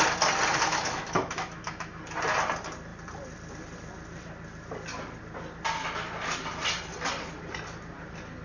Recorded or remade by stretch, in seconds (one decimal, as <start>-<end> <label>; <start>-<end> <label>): 0.0-0.7 recorded; 0.7-2.0 remade; 2.0-8.4 recorded